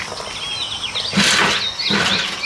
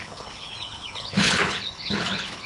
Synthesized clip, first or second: second